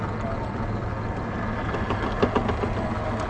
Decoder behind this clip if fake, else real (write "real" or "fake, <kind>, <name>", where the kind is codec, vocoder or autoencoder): real